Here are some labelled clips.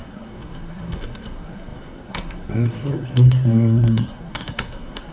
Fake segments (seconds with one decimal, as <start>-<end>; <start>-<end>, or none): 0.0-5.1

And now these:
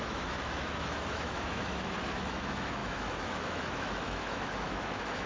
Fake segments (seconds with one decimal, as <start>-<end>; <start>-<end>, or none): 0.0-5.3

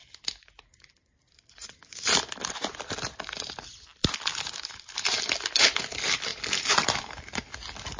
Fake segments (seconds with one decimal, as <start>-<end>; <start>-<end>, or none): 6.3-7.4

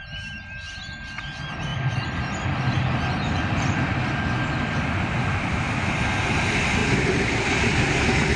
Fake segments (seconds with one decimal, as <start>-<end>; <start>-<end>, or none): 1.7-4.2

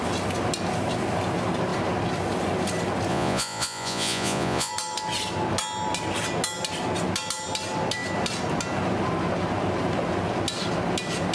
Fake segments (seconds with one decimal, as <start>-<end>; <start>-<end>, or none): 3.1-4.7

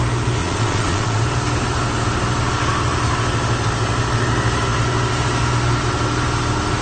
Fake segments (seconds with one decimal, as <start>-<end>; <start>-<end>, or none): 0.4-1.2